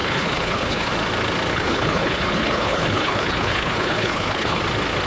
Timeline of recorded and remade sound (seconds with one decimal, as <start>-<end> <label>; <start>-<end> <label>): 0.0-0.9 remade; 0.9-1.5 recorded; 1.5-4.6 remade; 4.6-5.1 recorded